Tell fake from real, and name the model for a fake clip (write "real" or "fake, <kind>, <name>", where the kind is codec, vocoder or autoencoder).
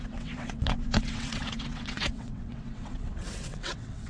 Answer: fake, vocoder, WaveNeXt